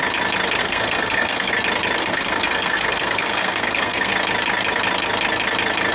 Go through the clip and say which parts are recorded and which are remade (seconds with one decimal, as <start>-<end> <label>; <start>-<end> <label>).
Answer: 0.0-0.6 recorded; 0.6-1.5 remade; 1.5-2.0 recorded; 2.0-4.1 remade; 4.1-5.9 recorded

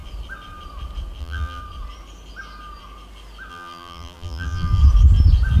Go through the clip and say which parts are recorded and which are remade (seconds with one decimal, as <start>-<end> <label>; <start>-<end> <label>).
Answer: 0.0-1.2 recorded; 1.2-1.6 remade; 1.6-3.5 recorded; 3.5-4.8 remade; 4.8-5.6 recorded

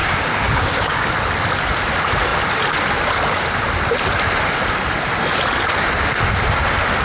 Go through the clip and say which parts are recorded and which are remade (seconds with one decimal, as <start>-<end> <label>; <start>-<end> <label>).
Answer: 0.0-1.1 remade; 1.1-7.0 recorded

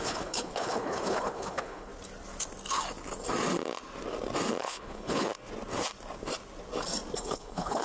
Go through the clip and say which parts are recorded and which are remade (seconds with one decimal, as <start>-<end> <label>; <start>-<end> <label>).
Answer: 0.0-1.9 remade; 1.9-4.6 recorded; 4.6-5.3 remade; 5.3-7.2 recorded; 7.2-7.8 remade

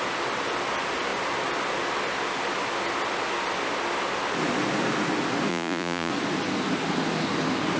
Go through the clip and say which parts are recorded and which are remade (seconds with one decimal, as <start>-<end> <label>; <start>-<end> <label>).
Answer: 0.0-5.5 recorded; 5.5-6.1 remade; 6.1-7.8 recorded

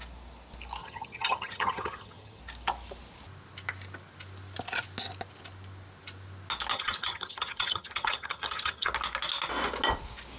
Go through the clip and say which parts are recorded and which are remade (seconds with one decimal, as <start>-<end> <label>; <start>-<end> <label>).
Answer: 0.0-0.8 recorded; 0.8-2.4 remade; 2.4-6.7 recorded; 6.7-8.9 remade; 8.9-10.4 recorded

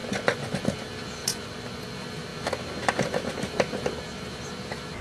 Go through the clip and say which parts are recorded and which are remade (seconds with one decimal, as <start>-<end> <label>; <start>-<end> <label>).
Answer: 0.0-0.5 remade; 0.5-1.2 recorded; 1.2-1.8 remade; 1.8-5.0 recorded